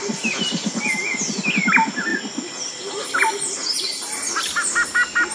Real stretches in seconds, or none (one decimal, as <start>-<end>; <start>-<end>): 0.0-5.3